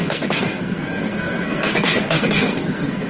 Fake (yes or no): yes